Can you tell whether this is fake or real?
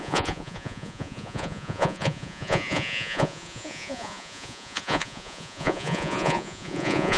fake